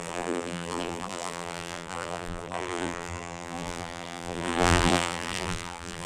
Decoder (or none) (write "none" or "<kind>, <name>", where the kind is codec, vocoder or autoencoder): vocoder, BigVGAN v2